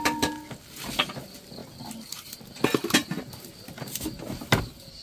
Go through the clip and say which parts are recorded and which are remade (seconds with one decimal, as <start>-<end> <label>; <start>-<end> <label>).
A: 0.0-5.0 recorded